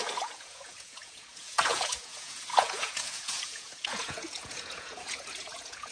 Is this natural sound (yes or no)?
no